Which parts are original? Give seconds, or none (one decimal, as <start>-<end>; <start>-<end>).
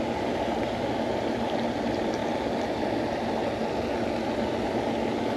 0.0-5.4